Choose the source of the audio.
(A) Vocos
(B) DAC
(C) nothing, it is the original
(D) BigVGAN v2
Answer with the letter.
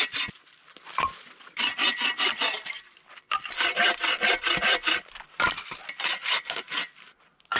D